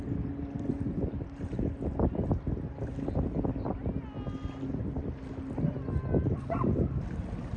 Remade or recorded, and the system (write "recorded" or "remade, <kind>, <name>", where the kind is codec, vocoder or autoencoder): recorded